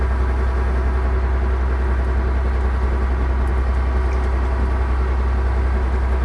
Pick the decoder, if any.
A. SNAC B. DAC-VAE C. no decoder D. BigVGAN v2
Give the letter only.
C